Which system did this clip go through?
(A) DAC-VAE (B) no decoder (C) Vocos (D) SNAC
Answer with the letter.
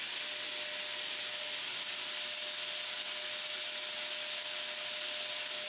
B